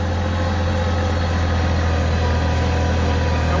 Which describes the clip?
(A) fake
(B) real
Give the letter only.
B